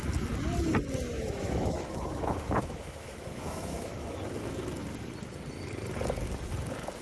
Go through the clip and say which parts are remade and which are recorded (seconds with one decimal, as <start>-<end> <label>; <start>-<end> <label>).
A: 0.0-1.1 recorded; 1.1-4.2 remade; 4.2-7.0 recorded